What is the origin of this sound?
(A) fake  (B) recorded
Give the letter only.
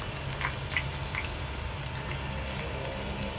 B